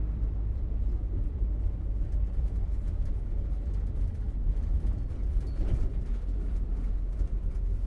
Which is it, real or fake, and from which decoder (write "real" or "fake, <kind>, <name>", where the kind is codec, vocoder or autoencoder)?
fake, vocoder, BigVGAN v2